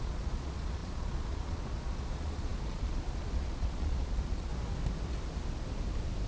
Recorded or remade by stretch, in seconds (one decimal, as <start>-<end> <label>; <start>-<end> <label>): 0.0-4.5 remade; 4.5-6.3 recorded